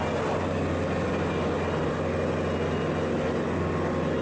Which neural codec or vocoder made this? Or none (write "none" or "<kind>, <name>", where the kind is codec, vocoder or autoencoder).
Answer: none